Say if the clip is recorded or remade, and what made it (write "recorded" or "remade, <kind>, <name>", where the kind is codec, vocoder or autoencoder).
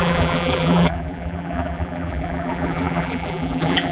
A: remade, vocoder, BigVGAN v2